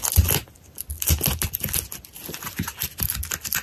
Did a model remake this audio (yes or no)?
no